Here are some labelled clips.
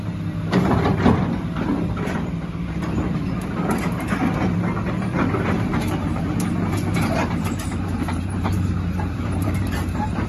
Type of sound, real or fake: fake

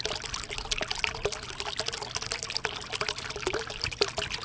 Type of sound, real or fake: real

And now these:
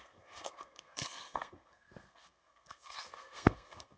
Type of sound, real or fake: fake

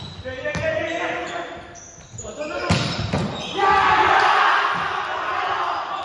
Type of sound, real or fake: real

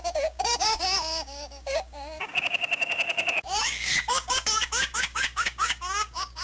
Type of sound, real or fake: fake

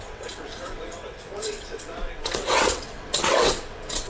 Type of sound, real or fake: fake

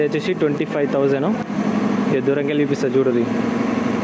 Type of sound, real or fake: real